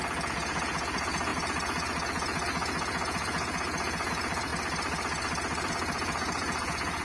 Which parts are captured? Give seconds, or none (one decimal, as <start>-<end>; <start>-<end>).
4.5-5.7